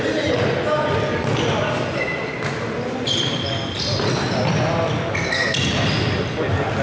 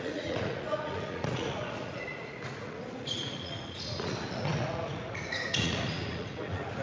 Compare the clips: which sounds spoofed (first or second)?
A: second